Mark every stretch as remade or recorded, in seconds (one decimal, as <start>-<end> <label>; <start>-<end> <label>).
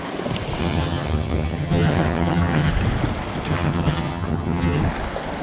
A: 0.0-0.6 recorded; 0.6-2.7 remade; 2.7-3.5 recorded; 3.5-4.8 remade; 4.8-5.4 recorded